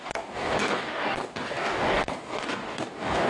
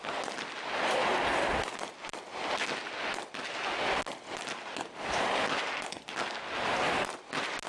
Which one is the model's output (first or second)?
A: first